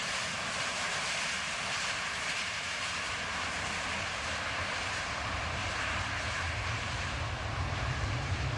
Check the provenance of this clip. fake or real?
fake